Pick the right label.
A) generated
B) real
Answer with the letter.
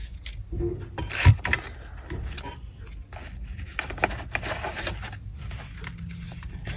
B